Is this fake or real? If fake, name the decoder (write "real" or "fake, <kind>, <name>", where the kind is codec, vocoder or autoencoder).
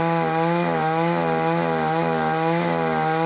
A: real